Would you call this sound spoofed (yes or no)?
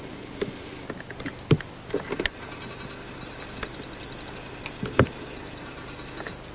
no